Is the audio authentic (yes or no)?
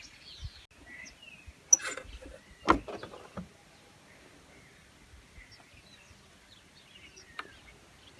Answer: yes